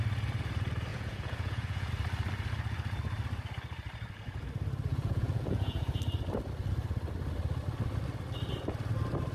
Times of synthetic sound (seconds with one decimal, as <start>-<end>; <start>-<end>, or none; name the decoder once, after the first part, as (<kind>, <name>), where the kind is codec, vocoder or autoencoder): 0.9-1.9 (vocoder, Vocos); 4.9-6.0